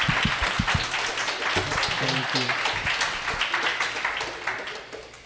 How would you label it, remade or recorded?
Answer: recorded